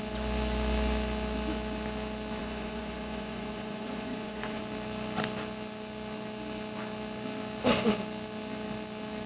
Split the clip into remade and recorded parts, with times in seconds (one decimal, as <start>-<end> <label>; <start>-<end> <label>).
0.0-2.4 recorded; 2.4-4.6 remade; 4.6-9.3 recorded